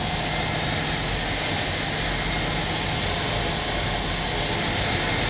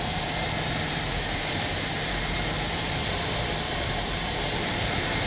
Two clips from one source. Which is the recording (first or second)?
first